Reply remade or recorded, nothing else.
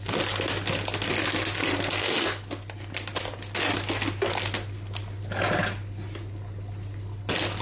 recorded